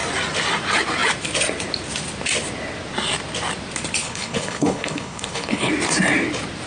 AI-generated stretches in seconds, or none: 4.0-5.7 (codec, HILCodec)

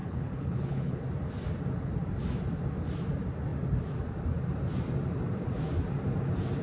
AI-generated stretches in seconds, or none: 0.0-1.0 (codec, HILCodec)

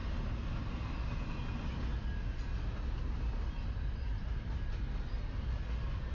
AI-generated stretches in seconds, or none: none

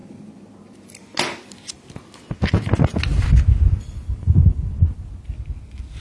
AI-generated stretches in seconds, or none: none

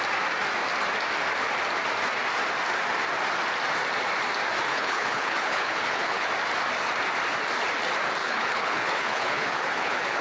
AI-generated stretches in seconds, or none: 4.7-6.3 (codec, HILCodec); 8.2-10.2

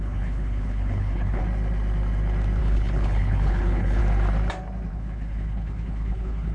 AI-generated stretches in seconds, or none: 0.0-1.4 (codec, HILCodec); 2.6-4.0; 4.9-6.5

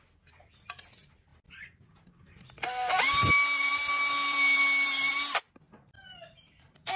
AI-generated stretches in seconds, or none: none

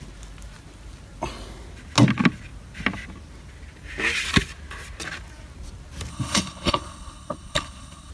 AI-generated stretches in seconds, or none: 6.1-8.1 (codec, HILCodec)